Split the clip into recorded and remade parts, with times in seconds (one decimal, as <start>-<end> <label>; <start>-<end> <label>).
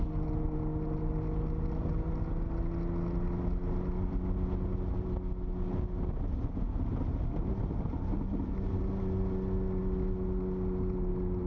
0.0-11.5 recorded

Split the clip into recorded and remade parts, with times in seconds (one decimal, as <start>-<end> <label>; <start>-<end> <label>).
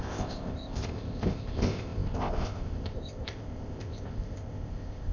0.0-5.1 remade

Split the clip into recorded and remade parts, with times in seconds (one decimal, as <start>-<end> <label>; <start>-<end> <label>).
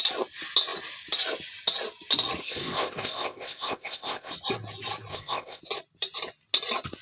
0.0-2.4 recorded; 2.4-4.3 remade; 4.3-5.1 recorded; 5.1-5.6 remade; 5.6-7.0 recorded